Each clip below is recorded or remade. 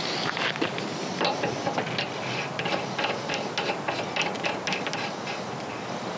recorded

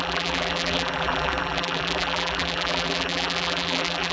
remade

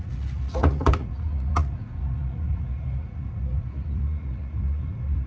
remade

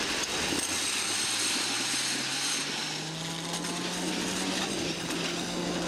recorded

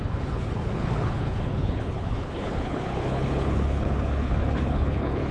remade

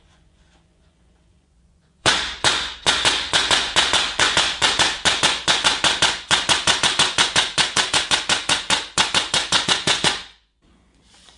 remade